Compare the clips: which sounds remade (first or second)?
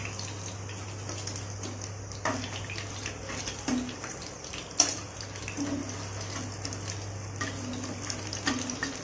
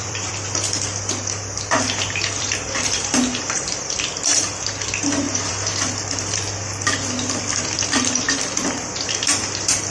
second